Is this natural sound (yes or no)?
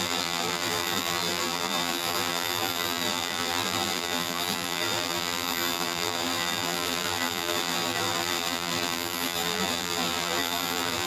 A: no